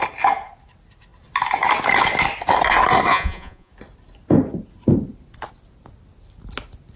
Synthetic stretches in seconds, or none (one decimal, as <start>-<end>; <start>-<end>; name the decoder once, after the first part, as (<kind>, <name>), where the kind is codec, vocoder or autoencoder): 3.1-3.7 (vocoder, Vocos)